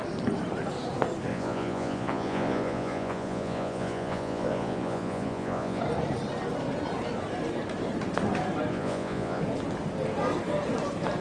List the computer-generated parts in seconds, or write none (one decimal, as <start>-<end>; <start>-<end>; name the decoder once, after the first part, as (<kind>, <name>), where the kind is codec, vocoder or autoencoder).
1.3-5.8 (vocoder, Vocos); 8.7-9.4